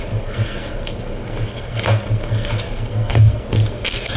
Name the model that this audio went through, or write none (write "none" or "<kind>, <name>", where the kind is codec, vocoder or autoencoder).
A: codec, SNAC